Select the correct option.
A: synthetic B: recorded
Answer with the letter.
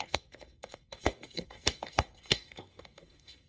A